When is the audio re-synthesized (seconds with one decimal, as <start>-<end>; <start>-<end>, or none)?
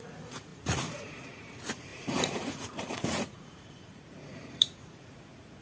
0.0-5.6